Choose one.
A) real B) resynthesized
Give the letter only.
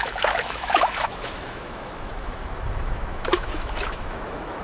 B